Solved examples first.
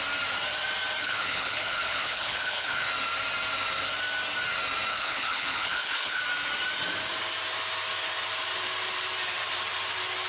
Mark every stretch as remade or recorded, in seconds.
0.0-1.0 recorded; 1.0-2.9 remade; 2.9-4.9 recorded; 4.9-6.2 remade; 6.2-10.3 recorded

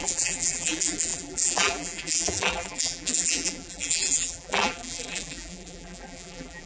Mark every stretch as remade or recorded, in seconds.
0.0-6.7 remade